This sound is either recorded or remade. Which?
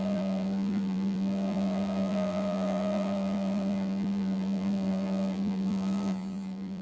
remade